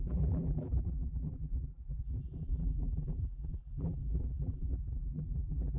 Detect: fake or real fake